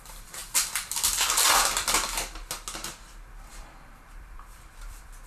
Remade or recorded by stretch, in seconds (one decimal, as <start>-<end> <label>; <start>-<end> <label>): 0.0-0.4 remade; 0.4-3.6 recorded; 3.6-5.3 remade